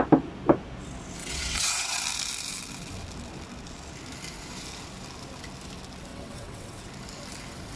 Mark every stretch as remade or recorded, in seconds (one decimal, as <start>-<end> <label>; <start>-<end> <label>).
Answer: 0.0-1.2 recorded; 1.2-2.0 remade; 2.0-6.1 recorded; 6.1-6.9 remade; 6.9-7.8 recorded